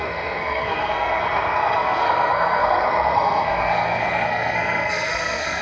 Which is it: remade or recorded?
remade